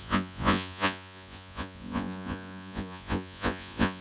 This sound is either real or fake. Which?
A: fake